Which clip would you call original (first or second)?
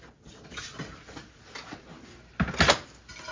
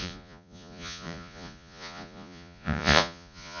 first